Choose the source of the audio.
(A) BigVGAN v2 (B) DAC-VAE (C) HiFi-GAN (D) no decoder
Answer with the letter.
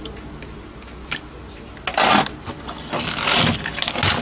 D